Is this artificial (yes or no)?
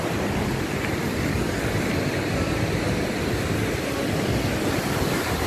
no